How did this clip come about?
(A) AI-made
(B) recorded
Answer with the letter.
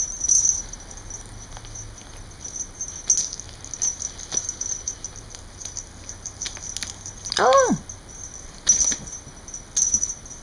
B